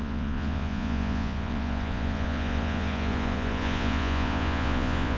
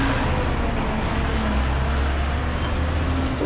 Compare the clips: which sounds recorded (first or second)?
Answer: second